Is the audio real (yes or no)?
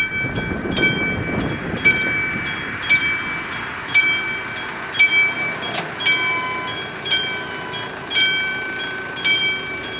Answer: yes